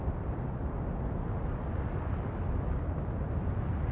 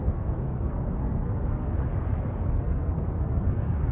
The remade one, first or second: second